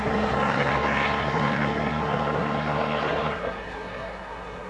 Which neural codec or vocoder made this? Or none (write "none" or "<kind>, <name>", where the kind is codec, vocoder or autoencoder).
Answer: codec, SNAC